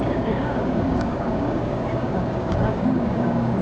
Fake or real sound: fake